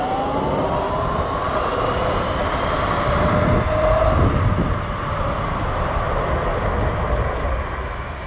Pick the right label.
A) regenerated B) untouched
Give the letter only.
B